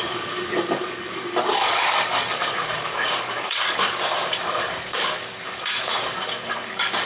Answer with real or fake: fake